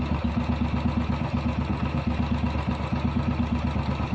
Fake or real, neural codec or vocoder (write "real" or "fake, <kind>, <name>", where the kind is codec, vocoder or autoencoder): real